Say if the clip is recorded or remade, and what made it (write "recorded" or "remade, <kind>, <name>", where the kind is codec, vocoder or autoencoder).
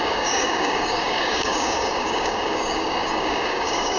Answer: remade, codec, DAC